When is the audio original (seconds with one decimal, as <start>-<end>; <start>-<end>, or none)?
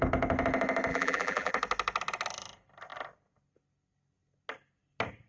0.0-0.9; 1.5-5.3